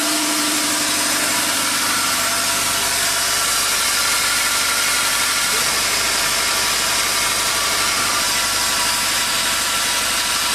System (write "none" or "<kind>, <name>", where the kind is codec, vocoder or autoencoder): vocoder, BigVGAN v2